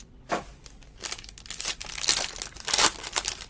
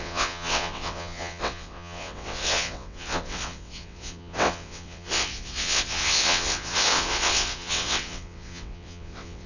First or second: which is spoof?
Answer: second